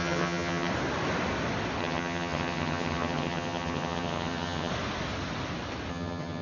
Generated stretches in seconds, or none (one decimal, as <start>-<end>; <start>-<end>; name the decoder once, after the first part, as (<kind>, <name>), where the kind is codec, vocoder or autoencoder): 0.0-0.7 (vocoder, HiFi-GAN); 1.8-4.7; 5.9-6.4